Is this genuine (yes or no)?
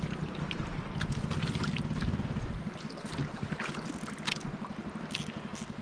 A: yes